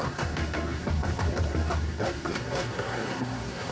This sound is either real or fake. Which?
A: fake